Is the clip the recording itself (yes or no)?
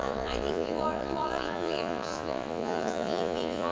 no